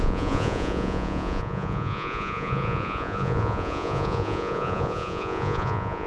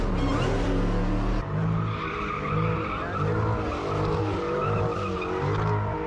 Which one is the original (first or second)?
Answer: second